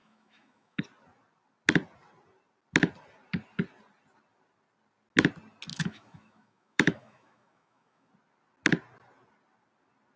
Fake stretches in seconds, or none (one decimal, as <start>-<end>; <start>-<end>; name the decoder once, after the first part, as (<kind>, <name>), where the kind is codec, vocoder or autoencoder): 0.0-0.8 (autoencoder, DAC-VAE); 5.7-8.1